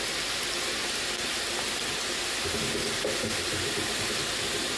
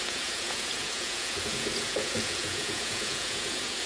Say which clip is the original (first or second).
first